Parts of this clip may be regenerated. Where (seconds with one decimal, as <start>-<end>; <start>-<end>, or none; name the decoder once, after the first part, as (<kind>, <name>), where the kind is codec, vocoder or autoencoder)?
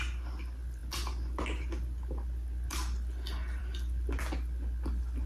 none